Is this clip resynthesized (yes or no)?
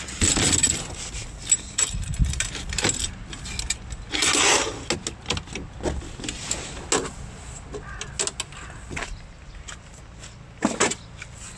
no